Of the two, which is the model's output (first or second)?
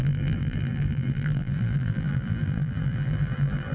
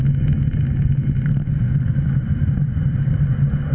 first